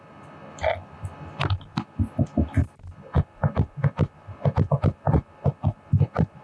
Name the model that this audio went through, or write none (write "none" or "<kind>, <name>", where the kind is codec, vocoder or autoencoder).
none